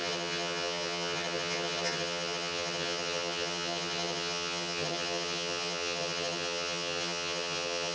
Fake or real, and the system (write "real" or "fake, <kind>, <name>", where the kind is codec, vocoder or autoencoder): fake, vocoder, HiFi-GAN